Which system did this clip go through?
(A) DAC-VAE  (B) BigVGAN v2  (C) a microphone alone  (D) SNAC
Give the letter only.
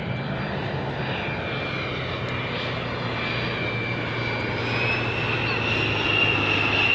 C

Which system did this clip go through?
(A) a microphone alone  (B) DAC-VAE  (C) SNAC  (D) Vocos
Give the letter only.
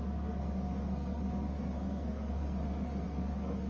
C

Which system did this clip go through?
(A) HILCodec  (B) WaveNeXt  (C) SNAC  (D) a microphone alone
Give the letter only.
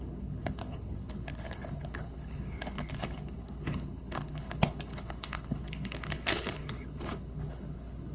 A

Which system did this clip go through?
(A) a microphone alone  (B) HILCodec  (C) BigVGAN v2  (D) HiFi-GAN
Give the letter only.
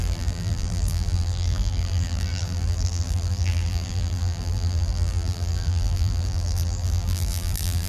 C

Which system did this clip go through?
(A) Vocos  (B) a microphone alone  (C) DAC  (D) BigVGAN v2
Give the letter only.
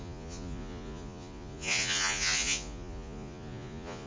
A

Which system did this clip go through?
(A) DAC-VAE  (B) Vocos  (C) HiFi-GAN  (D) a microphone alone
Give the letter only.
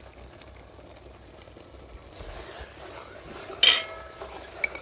D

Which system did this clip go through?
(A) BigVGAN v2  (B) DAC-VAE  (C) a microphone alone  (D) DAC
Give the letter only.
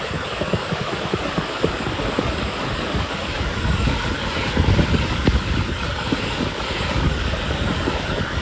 D